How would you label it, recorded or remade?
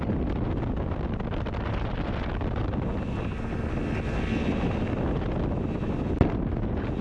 recorded